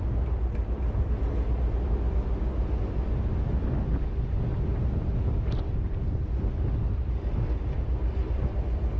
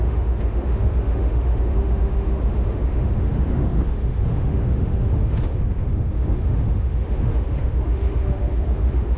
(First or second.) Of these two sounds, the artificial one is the second